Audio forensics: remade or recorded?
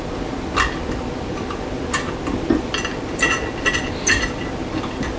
recorded